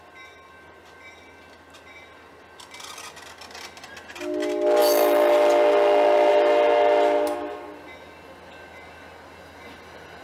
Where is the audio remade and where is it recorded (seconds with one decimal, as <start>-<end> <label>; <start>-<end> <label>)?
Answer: 0.0-10.2 recorded